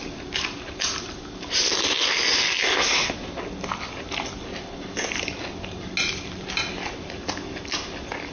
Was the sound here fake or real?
real